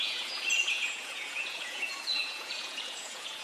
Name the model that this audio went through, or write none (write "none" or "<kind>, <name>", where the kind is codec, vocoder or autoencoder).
vocoder, Vocos